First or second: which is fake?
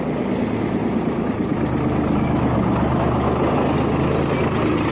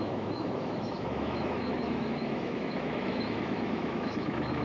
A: second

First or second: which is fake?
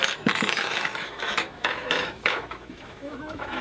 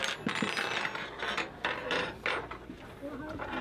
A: first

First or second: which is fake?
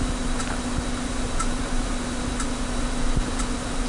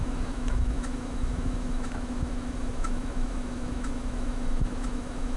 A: second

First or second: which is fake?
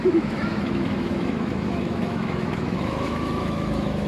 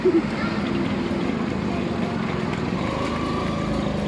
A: first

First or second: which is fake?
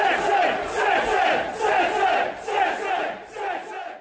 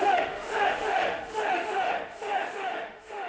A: second